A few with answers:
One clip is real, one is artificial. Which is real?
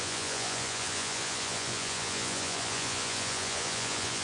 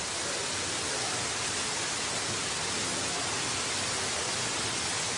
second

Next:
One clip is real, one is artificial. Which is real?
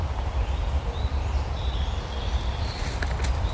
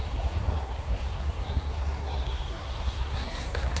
first